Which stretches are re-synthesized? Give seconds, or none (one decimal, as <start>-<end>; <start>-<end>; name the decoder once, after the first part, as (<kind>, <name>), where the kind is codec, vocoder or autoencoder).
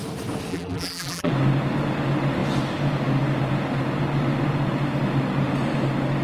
0.5-1.3 (vocoder, BigVGAN v2)